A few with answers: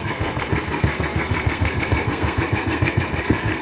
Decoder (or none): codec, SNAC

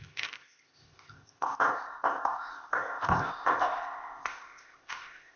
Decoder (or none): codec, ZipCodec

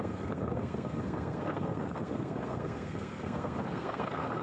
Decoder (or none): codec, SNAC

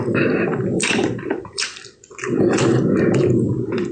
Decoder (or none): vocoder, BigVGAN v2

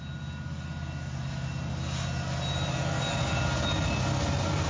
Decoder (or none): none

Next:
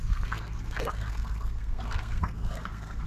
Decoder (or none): codec, SNAC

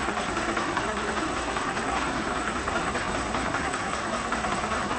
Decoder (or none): codec, SNAC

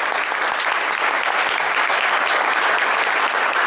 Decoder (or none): none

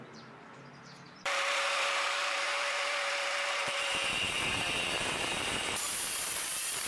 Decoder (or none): vocoder, BigVGAN v2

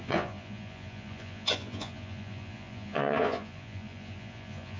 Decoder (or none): vocoder, Vocos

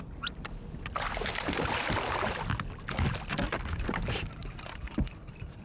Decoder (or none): none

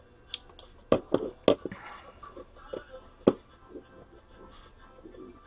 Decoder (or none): none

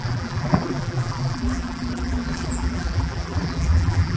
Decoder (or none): vocoder, BigVGAN v2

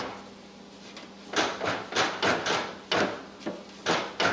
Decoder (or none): none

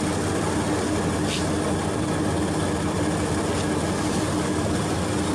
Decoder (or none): none